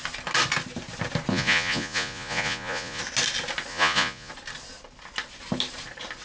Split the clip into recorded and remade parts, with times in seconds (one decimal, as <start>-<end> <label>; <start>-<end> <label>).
0.0-1.3 recorded; 1.3-3.0 remade; 3.0-3.7 recorded; 3.7-4.3 remade; 4.3-6.2 recorded